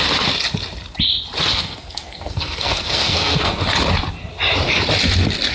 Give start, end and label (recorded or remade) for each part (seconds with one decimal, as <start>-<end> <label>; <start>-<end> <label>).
0.0-1.5 recorded; 1.5-3.6 remade; 3.6-5.5 recorded